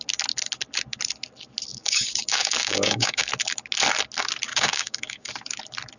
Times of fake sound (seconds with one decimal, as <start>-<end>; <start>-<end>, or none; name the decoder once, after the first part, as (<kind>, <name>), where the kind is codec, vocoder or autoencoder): 1.7-3.3 (codec, DAC); 4.5-5.3